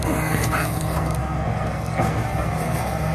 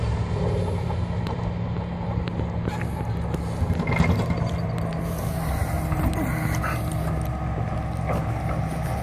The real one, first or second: second